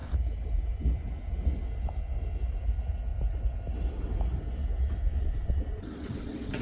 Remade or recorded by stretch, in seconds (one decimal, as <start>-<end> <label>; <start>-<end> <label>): 0.0-5.1 recorded; 5.1-6.6 remade